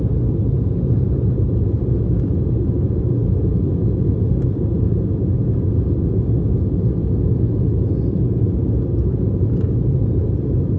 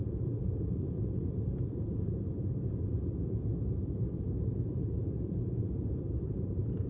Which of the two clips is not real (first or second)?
second